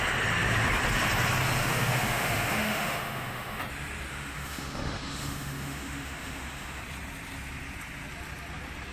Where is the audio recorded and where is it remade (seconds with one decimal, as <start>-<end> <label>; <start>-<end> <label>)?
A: 0.0-1.6 recorded; 1.6-3.6 remade; 3.6-4.1 recorded; 4.1-6.8 remade; 6.8-8.9 recorded